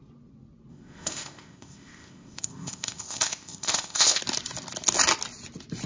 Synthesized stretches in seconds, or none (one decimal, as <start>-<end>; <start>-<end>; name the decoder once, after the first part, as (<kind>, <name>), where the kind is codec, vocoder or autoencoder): 0.7-4.2 (codec, ZipCodec)